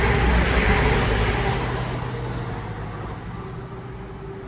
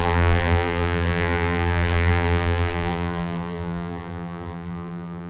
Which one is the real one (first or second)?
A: first